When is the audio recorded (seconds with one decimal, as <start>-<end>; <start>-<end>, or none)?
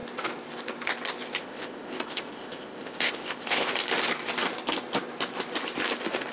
0.0-1.4; 3.7-6.3